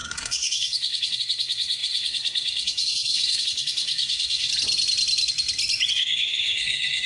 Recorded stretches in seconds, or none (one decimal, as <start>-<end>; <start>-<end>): 4.5-5.9